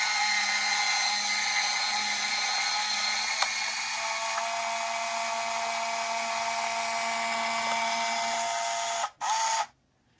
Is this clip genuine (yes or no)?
yes